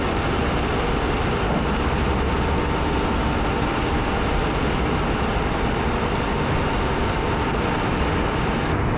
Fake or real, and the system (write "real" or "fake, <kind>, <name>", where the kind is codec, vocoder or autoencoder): real